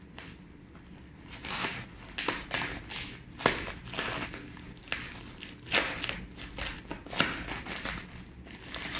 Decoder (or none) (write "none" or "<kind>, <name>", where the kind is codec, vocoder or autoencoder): none